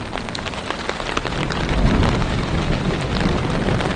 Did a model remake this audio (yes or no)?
no